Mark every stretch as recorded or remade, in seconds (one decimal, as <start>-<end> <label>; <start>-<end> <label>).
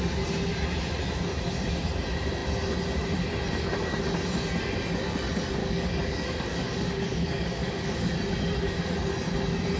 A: 0.0-5.6 recorded; 5.6-8.1 remade; 8.1-9.8 recorded